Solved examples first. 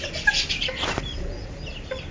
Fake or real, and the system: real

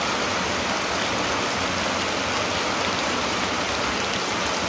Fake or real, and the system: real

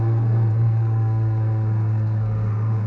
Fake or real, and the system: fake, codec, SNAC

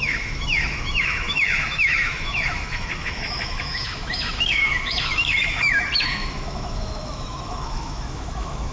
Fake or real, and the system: fake, autoencoder, DAC-VAE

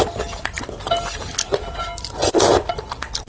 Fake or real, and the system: real